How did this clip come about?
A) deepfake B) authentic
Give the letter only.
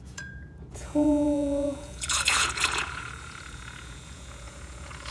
A